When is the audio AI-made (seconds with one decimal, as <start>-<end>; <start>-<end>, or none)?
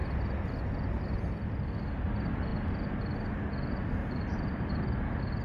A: 4.0-4.7